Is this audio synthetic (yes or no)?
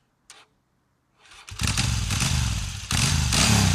no